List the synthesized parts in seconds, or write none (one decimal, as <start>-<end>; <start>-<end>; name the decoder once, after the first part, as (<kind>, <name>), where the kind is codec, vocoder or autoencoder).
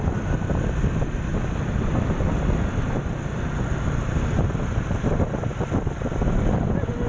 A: none